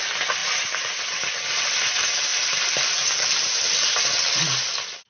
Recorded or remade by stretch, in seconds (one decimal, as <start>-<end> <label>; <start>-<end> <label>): 0.0-0.4 recorded; 0.4-1.4 remade; 1.4-2.3 recorded; 2.3-4.0 remade; 4.0-5.1 recorded